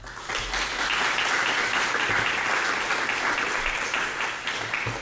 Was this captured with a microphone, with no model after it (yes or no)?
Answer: yes